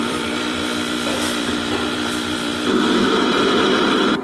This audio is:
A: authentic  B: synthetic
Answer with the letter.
B